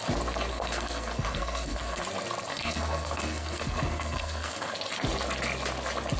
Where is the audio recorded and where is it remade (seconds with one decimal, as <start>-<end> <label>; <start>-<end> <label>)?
0.0-0.5 recorded; 0.5-2.0 remade; 2.0-2.5 recorded; 2.5-4.7 remade; 4.7-6.2 recorded